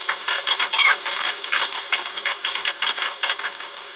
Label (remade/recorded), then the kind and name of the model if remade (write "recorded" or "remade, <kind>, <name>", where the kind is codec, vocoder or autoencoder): remade, codec, DAC